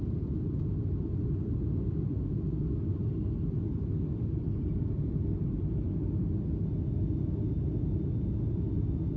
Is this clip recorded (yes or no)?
yes